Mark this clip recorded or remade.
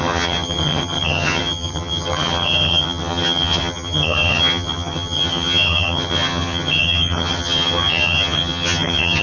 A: remade